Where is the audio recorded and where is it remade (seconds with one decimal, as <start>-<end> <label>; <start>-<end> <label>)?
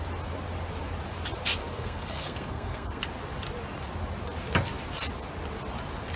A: 0.0-1.6 recorded; 1.6-3.0 remade; 3.0-6.2 recorded